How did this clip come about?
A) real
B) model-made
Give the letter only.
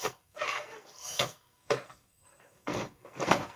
B